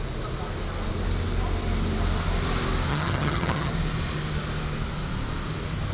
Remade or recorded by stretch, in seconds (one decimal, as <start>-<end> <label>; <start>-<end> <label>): 0.0-2.9 recorded; 2.9-3.7 remade; 3.7-5.9 recorded